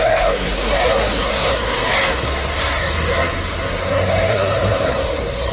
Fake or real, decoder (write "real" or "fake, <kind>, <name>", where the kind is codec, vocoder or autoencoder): fake, codec, SNAC